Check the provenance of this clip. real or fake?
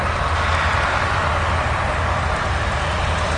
fake